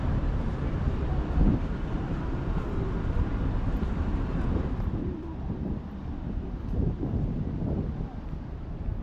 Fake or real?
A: fake